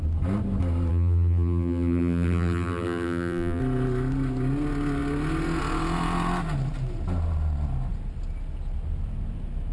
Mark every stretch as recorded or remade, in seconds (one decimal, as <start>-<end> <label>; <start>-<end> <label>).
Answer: 0.0-0.9 recorded; 0.9-3.6 remade; 3.6-9.7 recorded